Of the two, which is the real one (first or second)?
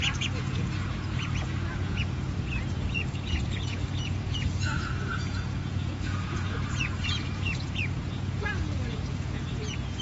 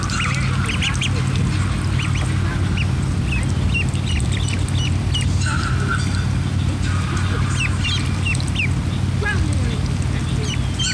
second